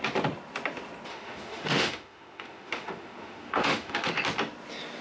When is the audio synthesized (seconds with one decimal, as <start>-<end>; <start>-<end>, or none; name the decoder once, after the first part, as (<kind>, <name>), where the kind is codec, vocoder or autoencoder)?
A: 1.1-4.1 (autoencoder, DAC-VAE)